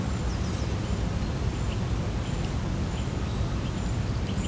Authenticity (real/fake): real